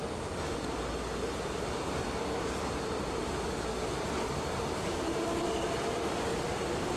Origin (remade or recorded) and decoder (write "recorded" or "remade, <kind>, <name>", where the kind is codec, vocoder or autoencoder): recorded